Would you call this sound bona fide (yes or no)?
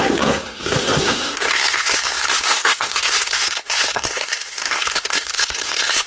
no